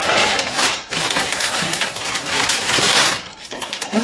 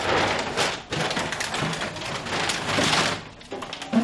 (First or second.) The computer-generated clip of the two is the first